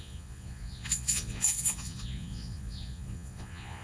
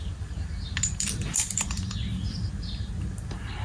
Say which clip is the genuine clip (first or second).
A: second